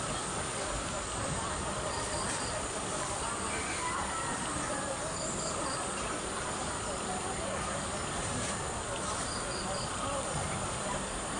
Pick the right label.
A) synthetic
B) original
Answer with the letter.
A